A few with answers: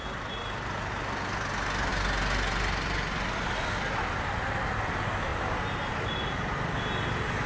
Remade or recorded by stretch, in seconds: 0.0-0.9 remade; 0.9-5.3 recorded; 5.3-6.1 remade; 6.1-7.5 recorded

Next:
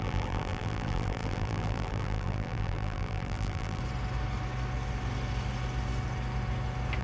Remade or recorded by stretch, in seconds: 0.0-3.8 remade; 3.8-7.0 recorded

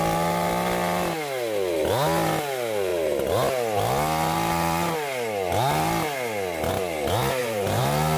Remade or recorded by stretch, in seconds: 0.0-7.4 recorded; 7.4-8.2 remade

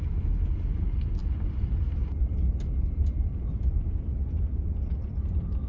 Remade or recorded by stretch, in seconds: 0.0-5.7 recorded

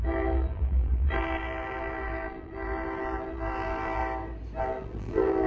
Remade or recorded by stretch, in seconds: 0.0-4.0 remade; 4.0-4.6 recorded; 4.6-5.5 remade

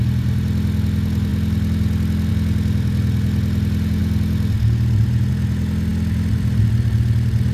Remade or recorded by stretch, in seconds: 0.0-7.5 recorded